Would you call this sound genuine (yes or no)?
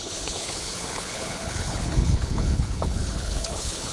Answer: no